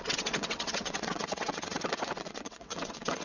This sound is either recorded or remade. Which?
remade